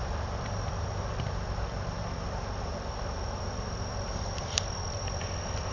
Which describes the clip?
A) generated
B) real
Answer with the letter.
A